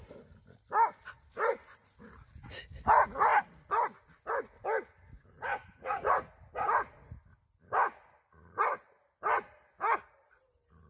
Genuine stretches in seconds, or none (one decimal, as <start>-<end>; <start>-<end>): 0.0-1.8; 2.7-5.5; 6.3-10.9